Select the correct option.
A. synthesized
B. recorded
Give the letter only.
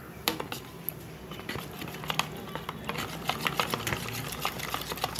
B